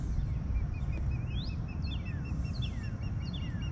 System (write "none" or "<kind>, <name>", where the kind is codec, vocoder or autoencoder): none